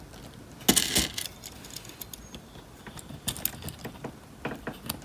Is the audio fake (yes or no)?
no